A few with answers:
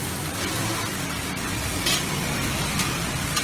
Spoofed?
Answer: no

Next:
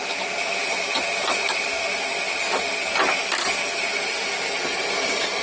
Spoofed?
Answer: no